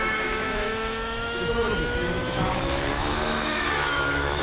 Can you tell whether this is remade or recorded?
remade